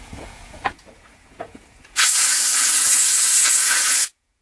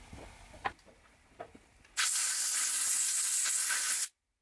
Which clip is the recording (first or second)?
second